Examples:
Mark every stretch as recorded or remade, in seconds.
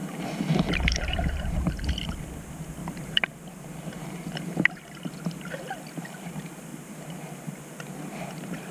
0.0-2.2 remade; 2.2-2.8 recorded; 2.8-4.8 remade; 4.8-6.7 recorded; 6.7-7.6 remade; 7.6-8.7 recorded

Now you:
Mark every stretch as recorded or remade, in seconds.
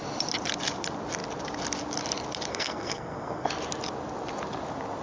0.0-2.5 recorded; 2.5-3.5 remade; 3.5-5.0 recorded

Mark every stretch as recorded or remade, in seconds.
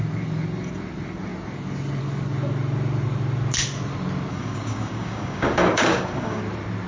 0.0-4.3 recorded; 4.3-6.4 remade; 6.4-6.9 recorded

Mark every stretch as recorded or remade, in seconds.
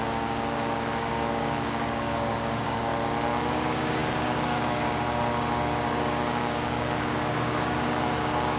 0.0-2.9 remade; 2.9-3.5 recorded; 3.5-8.6 remade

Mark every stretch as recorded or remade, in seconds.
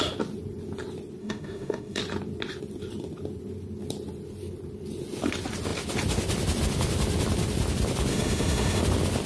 0.0-1.2 recorded; 1.2-2.0 remade; 2.0-8.1 recorded; 8.1-8.8 remade; 8.8-9.3 recorded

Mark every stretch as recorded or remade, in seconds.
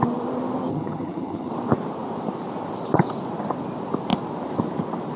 0.0-0.7 recorded; 0.7-1.5 remade; 1.5-5.2 recorded